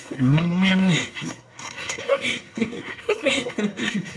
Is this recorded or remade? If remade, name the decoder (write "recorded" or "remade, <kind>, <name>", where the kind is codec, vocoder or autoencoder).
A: remade, codec, SNAC